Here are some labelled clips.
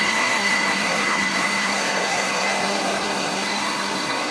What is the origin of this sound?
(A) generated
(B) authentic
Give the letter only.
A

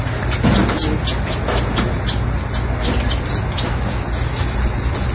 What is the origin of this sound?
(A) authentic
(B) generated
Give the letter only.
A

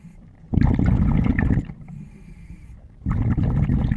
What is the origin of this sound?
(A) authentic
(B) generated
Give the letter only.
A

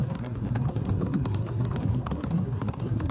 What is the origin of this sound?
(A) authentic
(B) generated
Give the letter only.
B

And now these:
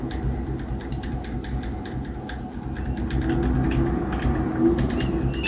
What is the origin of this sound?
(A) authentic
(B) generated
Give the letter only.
A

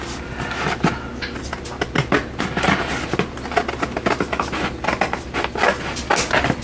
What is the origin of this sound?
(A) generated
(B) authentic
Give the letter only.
B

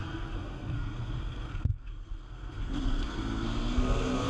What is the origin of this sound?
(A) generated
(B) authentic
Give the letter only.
A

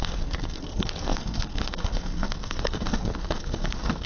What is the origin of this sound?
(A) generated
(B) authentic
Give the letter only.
A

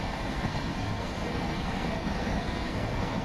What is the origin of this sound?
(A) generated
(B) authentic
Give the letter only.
A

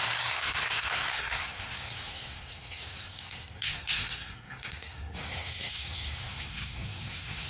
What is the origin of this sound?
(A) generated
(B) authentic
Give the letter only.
A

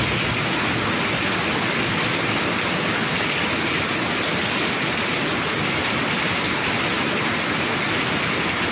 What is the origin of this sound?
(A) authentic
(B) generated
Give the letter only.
A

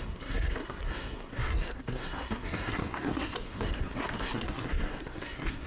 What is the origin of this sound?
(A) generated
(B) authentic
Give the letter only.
A